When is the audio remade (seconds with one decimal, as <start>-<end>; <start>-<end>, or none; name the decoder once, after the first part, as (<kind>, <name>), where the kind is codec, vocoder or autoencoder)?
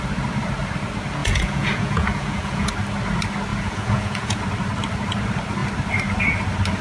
1.2-2.7 (vocoder, Vocos); 3.5-4.4